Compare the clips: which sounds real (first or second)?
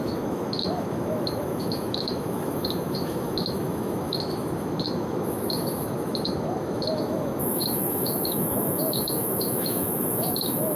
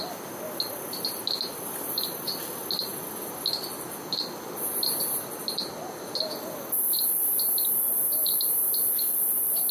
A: second